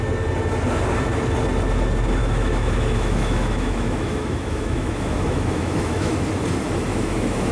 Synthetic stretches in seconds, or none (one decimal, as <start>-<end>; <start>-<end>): 2.2-6.2; 6.9-7.5